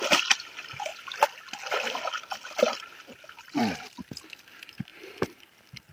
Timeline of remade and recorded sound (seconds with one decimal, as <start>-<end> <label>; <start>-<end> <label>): 0.0-4.9 recorded; 4.9-5.4 remade; 5.4-5.9 recorded